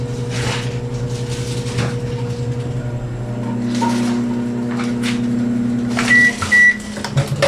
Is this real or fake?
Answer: real